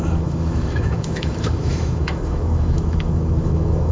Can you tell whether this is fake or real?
fake